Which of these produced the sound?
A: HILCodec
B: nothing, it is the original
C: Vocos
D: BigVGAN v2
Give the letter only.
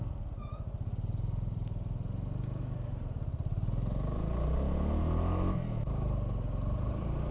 B